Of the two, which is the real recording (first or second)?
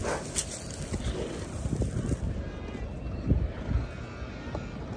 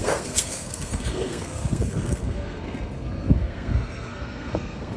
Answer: first